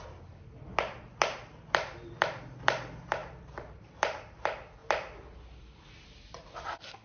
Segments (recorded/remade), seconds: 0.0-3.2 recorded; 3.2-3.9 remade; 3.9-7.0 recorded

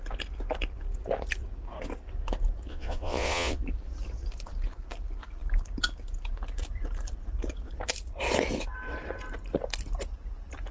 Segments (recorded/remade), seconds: 0.0-2.7 recorded; 2.7-3.6 remade; 3.6-10.7 recorded